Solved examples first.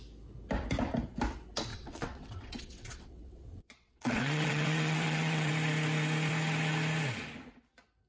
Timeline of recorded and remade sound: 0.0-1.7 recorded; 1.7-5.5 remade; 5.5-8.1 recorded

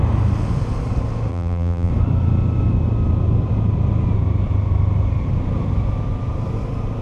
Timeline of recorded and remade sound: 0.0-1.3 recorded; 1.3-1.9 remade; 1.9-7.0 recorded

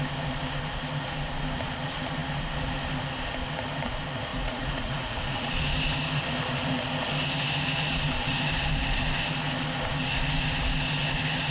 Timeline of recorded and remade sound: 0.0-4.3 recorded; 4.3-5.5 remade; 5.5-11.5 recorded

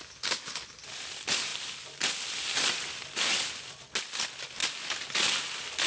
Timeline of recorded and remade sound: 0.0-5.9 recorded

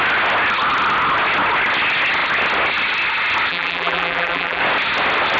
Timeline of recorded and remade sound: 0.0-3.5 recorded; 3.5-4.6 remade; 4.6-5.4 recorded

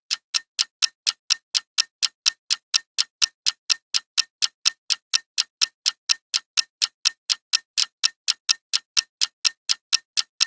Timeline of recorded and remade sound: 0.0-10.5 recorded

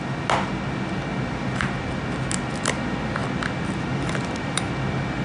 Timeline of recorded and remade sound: 0.0-5.2 recorded

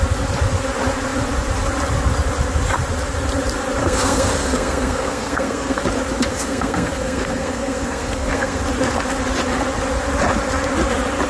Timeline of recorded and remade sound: 0.0-3.8 recorded; 3.8-5.8 remade; 5.8-6.3 recorded; 6.3-8.6 remade; 8.6-11.3 recorded